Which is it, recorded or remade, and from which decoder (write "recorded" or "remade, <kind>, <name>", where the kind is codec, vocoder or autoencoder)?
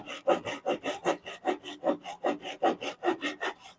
recorded